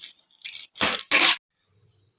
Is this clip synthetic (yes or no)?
no